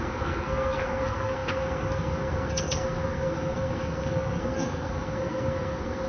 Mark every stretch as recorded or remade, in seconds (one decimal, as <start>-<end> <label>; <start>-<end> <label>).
0.0-6.1 remade